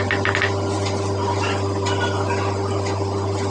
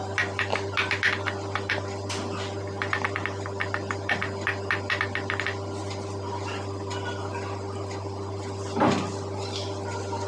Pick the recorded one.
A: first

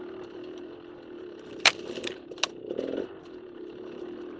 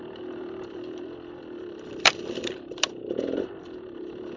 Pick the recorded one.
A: first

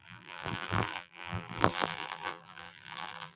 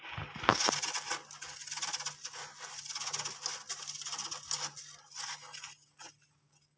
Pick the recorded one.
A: second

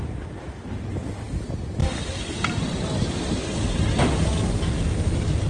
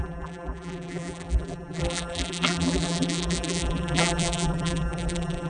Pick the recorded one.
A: first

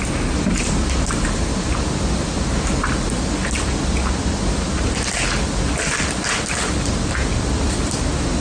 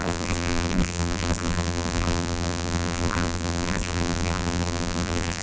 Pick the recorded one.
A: first